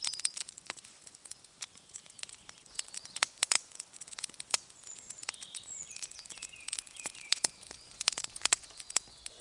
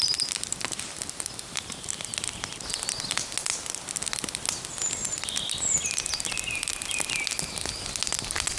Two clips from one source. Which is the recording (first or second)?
second